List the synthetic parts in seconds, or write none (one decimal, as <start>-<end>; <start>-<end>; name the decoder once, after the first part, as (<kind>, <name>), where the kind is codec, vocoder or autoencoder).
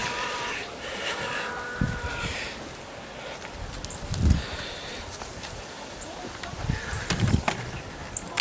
none